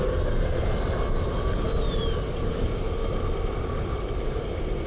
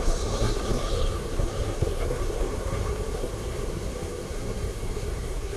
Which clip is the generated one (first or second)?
second